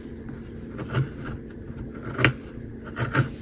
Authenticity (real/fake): real